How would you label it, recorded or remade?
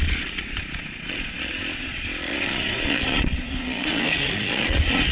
remade